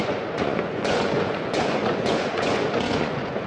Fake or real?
fake